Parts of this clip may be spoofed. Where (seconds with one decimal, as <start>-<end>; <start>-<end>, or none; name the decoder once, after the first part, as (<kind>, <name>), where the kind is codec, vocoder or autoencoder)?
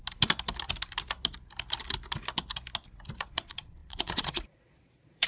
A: 3.2-5.3 (vocoder, Vocos)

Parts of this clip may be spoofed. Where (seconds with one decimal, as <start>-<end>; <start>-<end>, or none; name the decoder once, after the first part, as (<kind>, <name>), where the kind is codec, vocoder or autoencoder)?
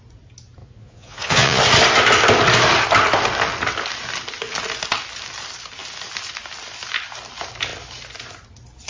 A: 0.6-1.6 (vocoder, Vocos)